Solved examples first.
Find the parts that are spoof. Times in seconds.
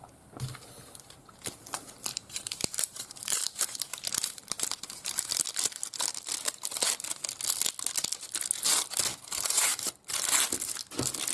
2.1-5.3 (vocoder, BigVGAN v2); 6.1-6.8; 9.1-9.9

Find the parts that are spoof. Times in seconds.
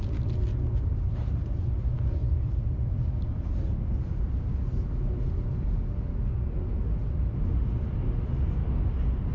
0.7-3.5 (vocoder, BigVGAN v2)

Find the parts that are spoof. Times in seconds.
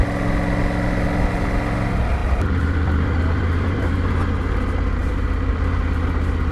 2.2-3.9 (vocoder, BigVGAN v2); 5.0-5.8